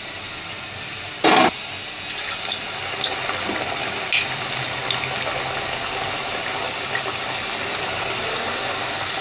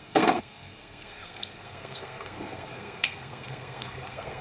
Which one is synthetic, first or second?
second